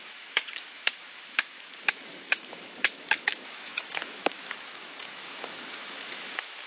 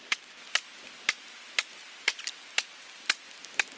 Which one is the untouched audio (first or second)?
second